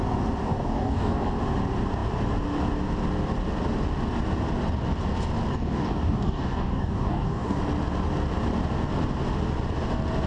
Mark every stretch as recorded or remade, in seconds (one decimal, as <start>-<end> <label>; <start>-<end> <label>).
0.0-0.4 recorded; 0.4-1.3 remade; 1.3-5.5 recorded; 5.5-7.6 remade; 7.6-10.3 recorded